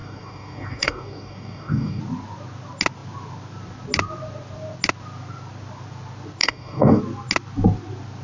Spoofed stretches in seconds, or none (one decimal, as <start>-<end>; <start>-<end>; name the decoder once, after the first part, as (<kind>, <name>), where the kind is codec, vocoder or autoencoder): 0.0-2.0 (codec, DAC); 6.4-7.0